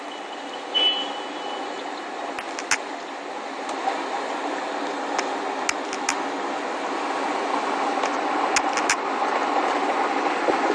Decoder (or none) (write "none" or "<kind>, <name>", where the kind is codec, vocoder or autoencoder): none